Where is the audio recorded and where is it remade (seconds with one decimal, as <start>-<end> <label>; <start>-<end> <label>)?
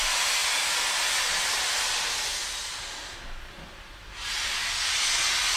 0.0-5.6 recorded